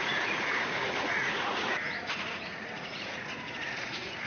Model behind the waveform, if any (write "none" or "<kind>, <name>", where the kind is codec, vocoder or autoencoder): vocoder, Vocos